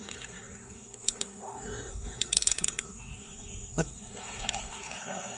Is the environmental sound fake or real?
fake